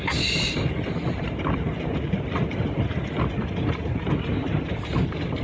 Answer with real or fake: real